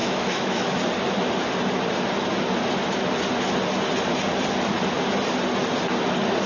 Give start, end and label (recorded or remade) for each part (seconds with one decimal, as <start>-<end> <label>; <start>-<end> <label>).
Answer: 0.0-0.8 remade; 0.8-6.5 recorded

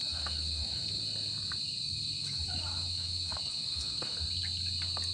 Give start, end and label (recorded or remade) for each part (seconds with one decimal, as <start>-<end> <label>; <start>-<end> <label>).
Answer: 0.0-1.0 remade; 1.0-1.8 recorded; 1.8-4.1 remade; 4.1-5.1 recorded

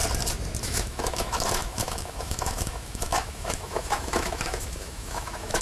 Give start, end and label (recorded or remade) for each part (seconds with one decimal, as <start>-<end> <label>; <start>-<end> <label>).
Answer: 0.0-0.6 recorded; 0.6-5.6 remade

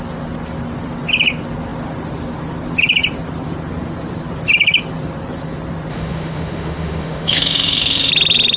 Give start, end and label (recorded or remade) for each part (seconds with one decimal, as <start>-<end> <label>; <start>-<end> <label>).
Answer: 0.0-5.9 recorded; 5.9-8.1 remade; 8.1-8.6 recorded

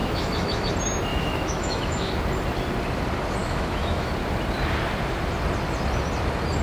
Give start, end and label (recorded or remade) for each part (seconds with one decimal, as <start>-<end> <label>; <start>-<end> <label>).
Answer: 0.0-0.7 remade; 0.7-1.1 recorded; 1.1-2.1 remade; 2.1-3.4 recorded; 3.4-4.1 remade; 4.1-6.6 recorded